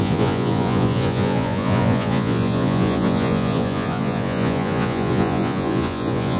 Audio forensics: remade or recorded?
remade